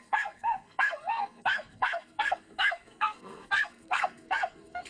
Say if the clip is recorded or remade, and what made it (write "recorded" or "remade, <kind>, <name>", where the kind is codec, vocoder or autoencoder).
remade, codec, SNAC